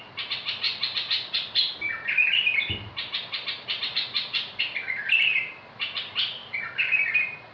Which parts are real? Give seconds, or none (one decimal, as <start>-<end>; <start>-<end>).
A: 0.0-7.5